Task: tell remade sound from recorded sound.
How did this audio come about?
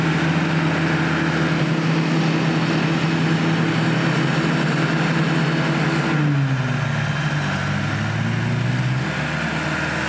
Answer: recorded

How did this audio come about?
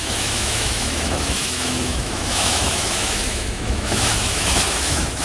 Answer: remade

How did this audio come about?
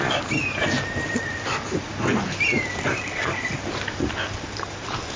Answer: recorded